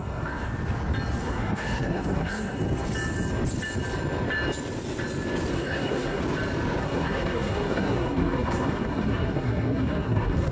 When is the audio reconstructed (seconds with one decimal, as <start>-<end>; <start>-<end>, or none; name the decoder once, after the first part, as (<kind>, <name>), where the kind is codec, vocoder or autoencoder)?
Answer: 0.0-0.5 (codec, SNAC); 1.2-2.6; 5.5-6.2; 6.8-10.5